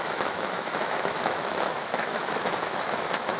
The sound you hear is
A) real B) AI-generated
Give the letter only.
B